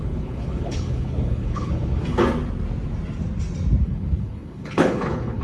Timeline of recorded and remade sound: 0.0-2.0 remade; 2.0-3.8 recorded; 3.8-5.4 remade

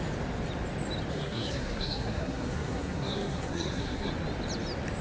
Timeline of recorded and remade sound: 0.0-1.1 recorded; 1.1-4.1 remade; 4.1-5.0 recorded

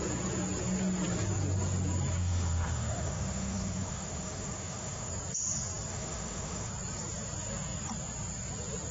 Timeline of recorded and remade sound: 0.0-2.2 recorded; 2.2-5.1 remade; 5.1-5.9 recorded; 5.9-6.7 remade; 6.7-8.9 recorded

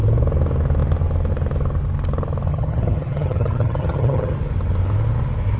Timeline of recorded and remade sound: 0.0-2.5 recorded; 2.5-4.3 remade; 4.3-5.6 recorded

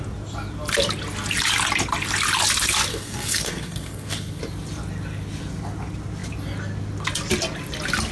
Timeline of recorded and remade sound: 0.0-2.9 recorded; 2.9-4.4 remade; 4.4-8.1 recorded

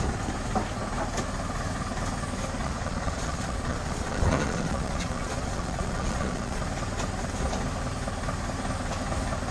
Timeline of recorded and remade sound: 0.0-2.6 recorded; 2.6-6.6 remade; 6.6-9.5 recorded

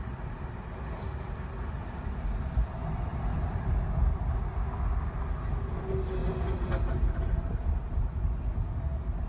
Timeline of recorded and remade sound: 0.0-9.3 recorded